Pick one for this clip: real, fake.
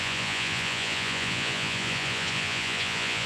fake